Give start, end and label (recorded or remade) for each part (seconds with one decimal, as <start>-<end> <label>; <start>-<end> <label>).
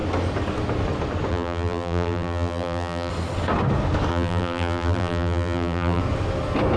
0.0-1.3 recorded; 1.3-3.1 remade; 3.1-4.1 recorded; 4.1-6.0 remade; 6.0-6.8 recorded